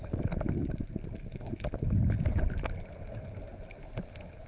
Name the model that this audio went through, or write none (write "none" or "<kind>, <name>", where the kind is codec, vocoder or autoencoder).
none